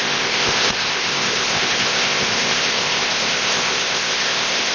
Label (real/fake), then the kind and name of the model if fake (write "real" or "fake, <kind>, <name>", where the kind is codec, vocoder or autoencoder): fake, codec, ZipCodec